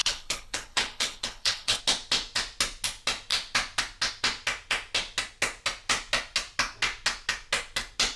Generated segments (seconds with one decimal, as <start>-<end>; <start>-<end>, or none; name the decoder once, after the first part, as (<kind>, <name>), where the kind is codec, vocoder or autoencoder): 0.0-1.8 (codec, HILCodec)